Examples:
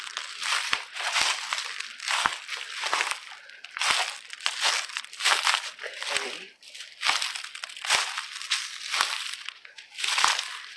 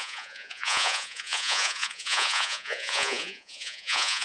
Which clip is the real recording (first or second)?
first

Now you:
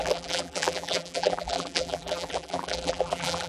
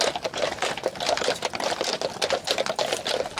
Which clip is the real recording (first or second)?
second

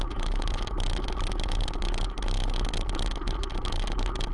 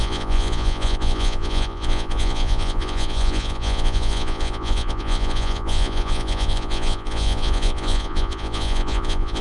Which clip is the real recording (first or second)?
first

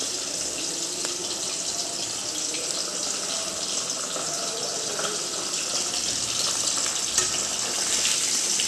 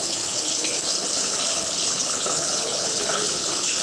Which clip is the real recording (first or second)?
first